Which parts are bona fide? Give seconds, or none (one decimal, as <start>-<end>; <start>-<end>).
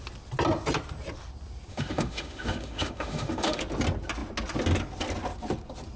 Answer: 0.0-1.7; 3.6-6.0